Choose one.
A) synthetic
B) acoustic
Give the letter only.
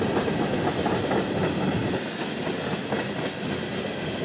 B